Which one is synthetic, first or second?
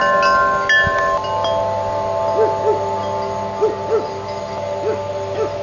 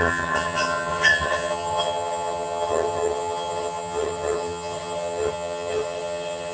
second